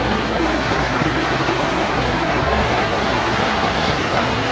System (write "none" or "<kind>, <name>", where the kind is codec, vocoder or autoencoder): codec, SNAC